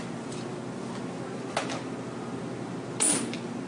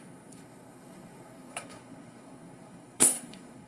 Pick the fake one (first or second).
second